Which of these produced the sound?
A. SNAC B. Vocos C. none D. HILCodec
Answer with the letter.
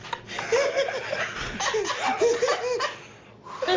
C